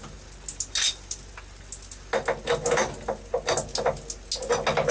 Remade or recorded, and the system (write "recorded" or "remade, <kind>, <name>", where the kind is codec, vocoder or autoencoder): recorded